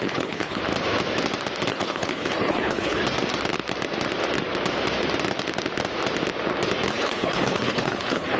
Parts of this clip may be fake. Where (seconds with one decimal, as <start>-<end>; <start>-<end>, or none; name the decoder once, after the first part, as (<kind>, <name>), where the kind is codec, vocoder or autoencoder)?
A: 0.0-0.6 (codec, HILCodec); 1.7-3.0; 6.9-8.4